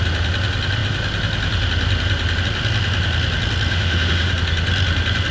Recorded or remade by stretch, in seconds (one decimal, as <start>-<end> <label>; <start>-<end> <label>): 0.0-3.7 recorded; 3.7-4.3 remade; 4.3-5.3 recorded